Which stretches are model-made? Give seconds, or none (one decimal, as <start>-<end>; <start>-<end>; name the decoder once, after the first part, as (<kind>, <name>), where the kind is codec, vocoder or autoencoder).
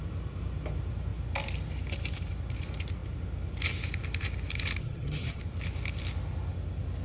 4.8-5.4 (vocoder, HiFi-GAN)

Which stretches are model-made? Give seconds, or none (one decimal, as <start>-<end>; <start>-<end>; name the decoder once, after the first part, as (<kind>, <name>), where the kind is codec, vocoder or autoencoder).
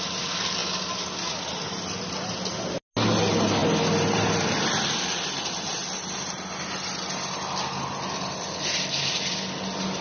none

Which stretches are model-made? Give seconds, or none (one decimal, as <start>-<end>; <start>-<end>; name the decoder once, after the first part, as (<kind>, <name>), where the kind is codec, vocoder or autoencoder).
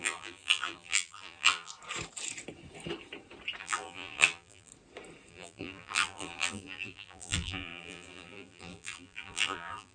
0.0-1.7 (vocoder, BigVGAN v2); 3.6-4.7; 5.3-9.9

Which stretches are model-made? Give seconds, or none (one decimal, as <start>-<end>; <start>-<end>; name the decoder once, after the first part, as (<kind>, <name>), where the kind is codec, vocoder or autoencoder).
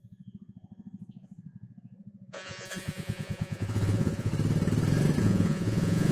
0.0-4.3 (vocoder, Vocos); 5.2-6.1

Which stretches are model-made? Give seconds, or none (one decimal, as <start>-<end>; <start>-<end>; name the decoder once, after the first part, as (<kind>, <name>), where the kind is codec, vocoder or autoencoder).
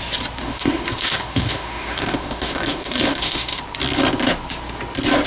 0.4-3.6 (autoencoder, DAC-VAE)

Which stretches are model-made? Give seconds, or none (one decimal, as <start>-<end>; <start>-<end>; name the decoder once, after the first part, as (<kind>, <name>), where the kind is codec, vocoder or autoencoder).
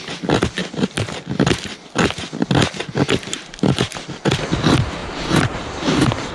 5.0-6.3 (vocoder, BigVGAN v2)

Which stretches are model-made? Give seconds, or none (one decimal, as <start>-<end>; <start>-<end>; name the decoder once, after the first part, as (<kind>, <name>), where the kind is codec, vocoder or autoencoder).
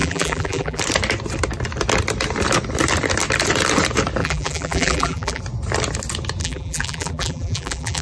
0.0-0.8 (vocoder, BigVGAN v2); 4.2-5.4; 6.4-8.0